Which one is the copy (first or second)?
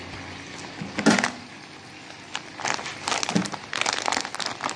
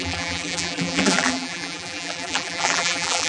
second